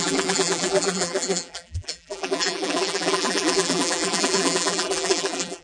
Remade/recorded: remade